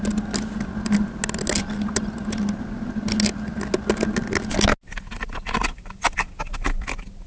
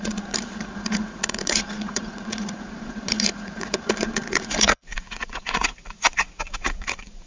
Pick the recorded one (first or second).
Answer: first